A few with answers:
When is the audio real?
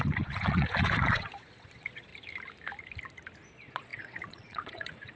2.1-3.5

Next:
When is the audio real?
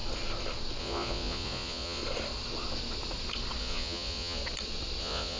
0.0-0.8; 2.0-3.6; 4.4-5.0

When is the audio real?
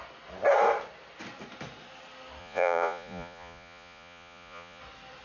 0.0-2.4; 4.8-5.2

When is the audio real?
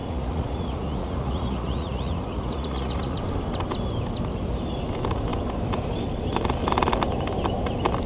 3.2-8.1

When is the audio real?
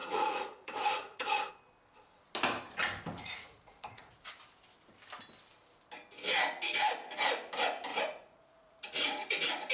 1.5-3.1; 4.3-7.9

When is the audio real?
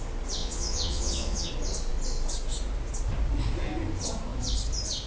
0.0-0.4; 1.5-5.1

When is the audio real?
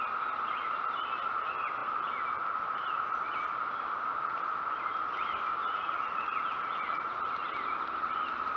0.0-5.6; 7.3-8.6